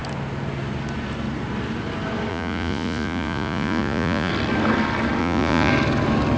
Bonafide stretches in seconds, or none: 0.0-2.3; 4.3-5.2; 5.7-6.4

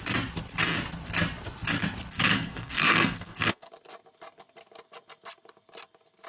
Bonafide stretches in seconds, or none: 0.0-2.3; 3.7-6.3